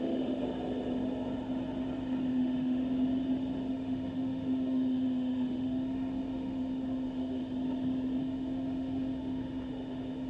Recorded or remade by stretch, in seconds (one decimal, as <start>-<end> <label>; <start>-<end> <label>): 0.0-0.4 remade; 0.4-2.3 recorded; 2.3-2.8 remade; 2.8-3.7 recorded; 3.7-7.4 remade; 7.4-8.2 recorded; 8.2-10.3 remade